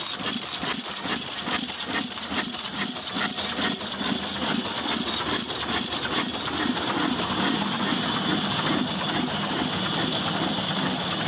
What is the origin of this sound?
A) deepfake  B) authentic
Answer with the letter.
B